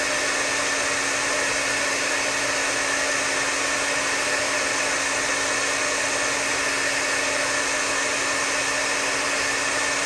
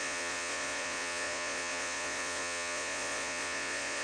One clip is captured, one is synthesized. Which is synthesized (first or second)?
second